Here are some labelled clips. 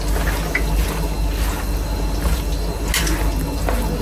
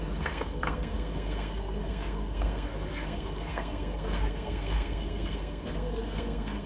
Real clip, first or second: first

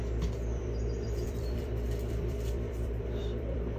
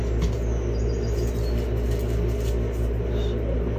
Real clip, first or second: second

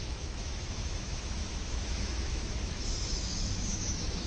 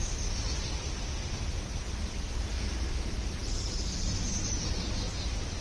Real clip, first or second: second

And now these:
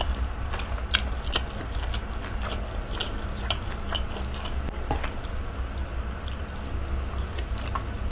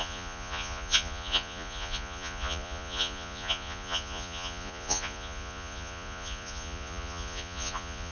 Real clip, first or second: first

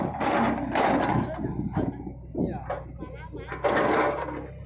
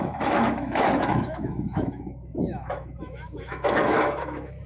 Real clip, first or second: first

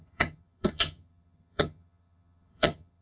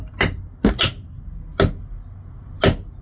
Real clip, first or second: second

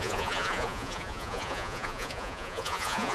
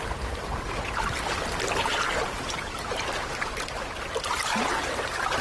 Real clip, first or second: second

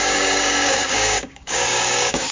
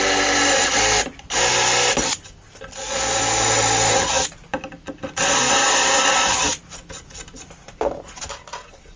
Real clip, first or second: second